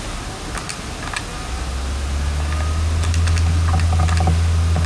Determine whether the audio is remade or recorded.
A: recorded